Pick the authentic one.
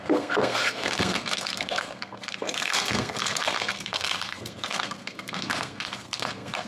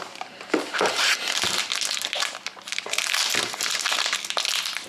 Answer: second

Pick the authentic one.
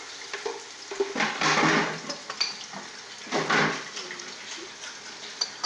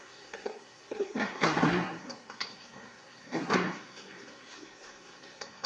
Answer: first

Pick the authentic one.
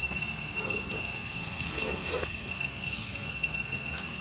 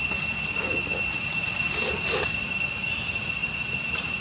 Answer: second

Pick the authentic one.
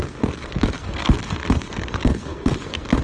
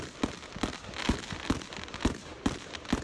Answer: second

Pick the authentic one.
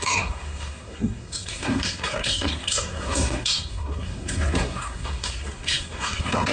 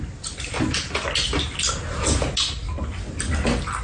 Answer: second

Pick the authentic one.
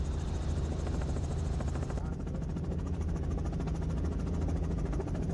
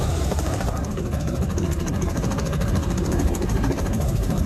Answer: first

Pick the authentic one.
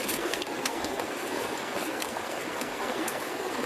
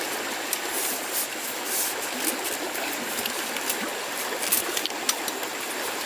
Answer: second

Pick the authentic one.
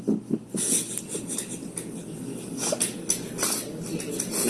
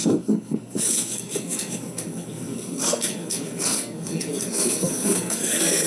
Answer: first